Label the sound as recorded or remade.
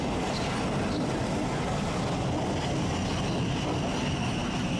recorded